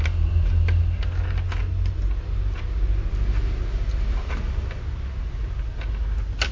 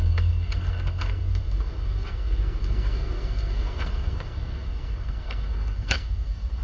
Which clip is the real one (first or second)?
first